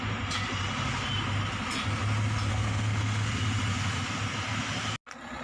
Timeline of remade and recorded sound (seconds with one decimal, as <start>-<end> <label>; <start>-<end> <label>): 0.0-2.5 recorded; 2.5-3.3 remade; 3.3-5.4 recorded